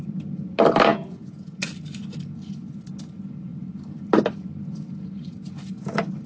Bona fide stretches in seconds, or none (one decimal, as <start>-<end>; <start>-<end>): 0.0-0.9; 1.7-6.3